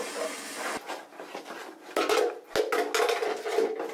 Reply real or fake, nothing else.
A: real